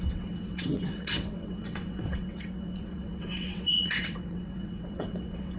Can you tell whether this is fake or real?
fake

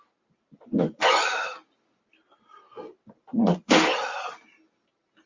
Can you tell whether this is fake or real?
real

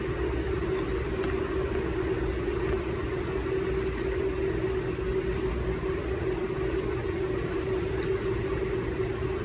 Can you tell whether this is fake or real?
real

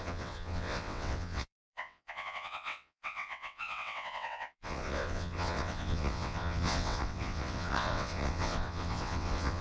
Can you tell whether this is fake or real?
fake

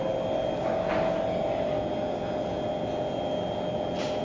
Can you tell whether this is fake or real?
real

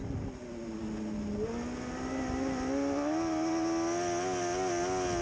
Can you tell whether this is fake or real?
real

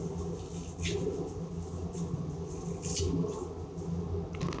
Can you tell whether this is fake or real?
real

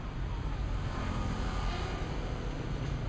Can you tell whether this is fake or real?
real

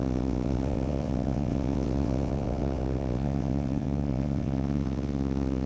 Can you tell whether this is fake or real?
fake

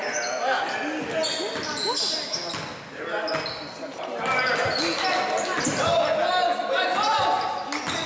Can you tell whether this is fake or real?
real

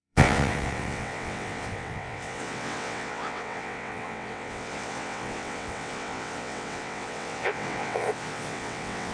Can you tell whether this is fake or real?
fake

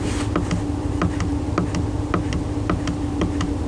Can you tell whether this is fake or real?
real